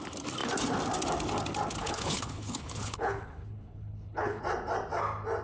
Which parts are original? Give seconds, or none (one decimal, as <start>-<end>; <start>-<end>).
0.0-1.8; 4.4-5.4